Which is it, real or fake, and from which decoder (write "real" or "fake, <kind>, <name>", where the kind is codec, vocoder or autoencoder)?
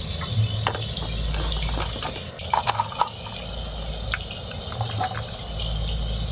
real